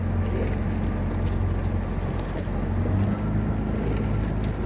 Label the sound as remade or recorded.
recorded